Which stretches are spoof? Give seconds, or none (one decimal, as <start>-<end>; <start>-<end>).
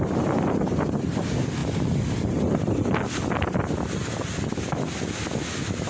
none